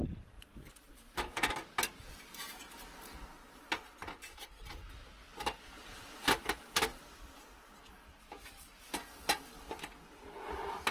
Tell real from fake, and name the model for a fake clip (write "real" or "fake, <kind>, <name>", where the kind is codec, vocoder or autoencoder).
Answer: real